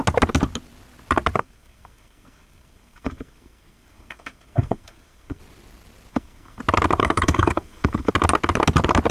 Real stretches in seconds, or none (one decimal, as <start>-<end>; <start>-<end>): 0.0-1.4; 5.4-6.1; 6.6-7.0; 8.1-9.1